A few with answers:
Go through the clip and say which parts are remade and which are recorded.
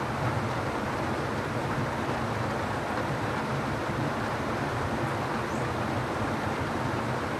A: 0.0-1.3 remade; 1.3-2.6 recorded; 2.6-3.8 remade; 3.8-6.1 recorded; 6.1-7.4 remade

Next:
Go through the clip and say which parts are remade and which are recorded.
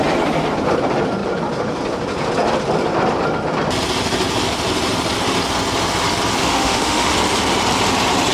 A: 0.0-6.4 recorded; 6.4-7.1 remade; 7.1-8.3 recorded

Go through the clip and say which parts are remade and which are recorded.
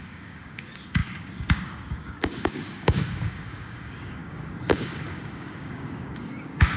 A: 0.0-6.8 remade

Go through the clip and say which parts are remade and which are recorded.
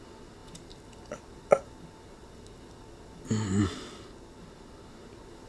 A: 0.0-5.5 recorded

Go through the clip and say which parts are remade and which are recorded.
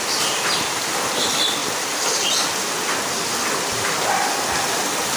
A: 0.0-5.2 remade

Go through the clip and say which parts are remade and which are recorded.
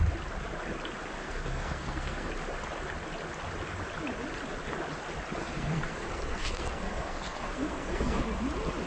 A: 0.0-1.2 recorded; 1.2-2.3 remade; 2.3-5.4 recorded; 5.4-8.2 remade; 8.2-8.9 recorded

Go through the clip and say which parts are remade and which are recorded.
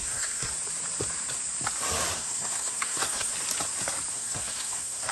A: 0.0-0.5 remade; 0.5-2.1 recorded; 2.1-3.3 remade; 3.3-4.1 recorded; 4.1-5.1 remade